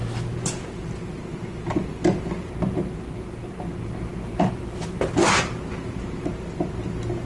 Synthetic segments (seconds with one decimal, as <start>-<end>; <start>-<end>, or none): none